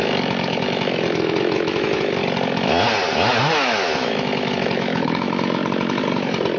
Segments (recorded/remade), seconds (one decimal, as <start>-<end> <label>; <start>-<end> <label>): 0.0-2.2 remade; 2.2-3.4 recorded; 3.4-5.6 remade; 5.6-6.6 recorded

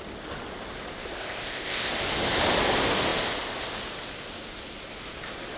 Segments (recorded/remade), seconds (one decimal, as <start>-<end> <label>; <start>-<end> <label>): 0.0-1.2 recorded; 1.2-1.9 remade; 1.9-5.6 recorded

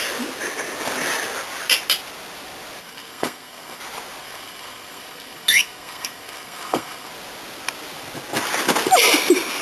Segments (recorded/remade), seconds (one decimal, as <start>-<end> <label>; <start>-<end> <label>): 0.0-2.8 recorded; 2.8-3.8 remade; 3.8-4.2 recorded; 4.2-7.1 remade; 7.1-9.6 recorded

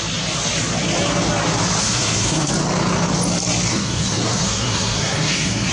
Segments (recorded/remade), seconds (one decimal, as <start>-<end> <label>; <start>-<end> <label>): 0.0-1.8 recorded; 1.8-2.5 remade; 2.5-3.7 recorded; 3.7-5.7 remade

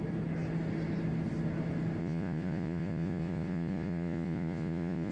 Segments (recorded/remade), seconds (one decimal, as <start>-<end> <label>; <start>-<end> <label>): 0.0-2.0 recorded; 2.0-5.1 remade

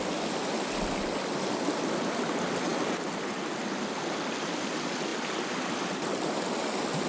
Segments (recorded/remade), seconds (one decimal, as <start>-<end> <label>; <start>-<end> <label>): 0.0-7.1 recorded